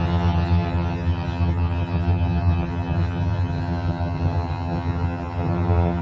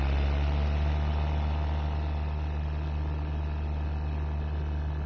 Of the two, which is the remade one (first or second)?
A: first